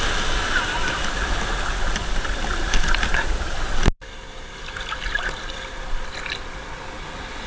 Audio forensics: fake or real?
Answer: real